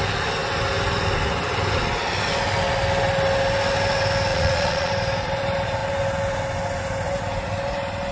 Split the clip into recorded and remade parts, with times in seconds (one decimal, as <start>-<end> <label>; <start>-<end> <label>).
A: 0.0-4.3 recorded; 4.3-4.9 remade; 4.9-8.1 recorded